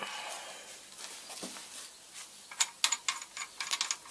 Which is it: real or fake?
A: real